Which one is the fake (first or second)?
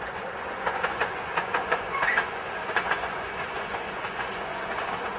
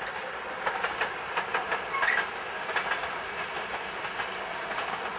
first